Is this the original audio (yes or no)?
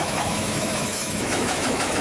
no